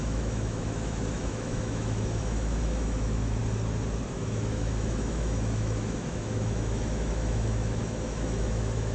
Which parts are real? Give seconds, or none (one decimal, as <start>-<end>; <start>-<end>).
3.4-4.1